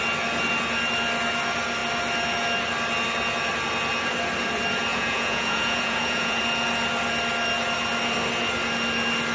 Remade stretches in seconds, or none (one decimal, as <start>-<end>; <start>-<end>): 4.9-6.4

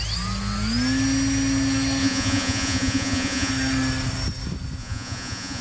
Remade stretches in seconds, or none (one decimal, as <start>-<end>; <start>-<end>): 2.0-3.5; 4.8-5.6

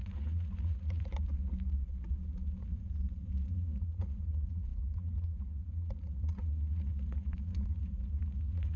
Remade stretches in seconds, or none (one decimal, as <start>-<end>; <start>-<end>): 0.0-1.1; 3.5-8.8

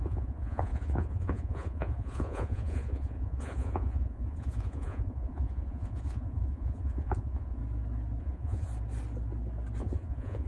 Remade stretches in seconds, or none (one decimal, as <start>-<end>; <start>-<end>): 0.0-7.6; 8.2-8.7; 9.8-10.5